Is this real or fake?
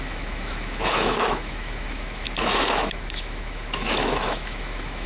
fake